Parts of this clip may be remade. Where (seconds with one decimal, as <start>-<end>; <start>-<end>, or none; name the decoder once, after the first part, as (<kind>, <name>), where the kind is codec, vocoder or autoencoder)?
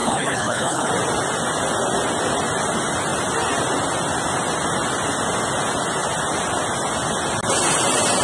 0.0-0.9 (codec, HILCodec)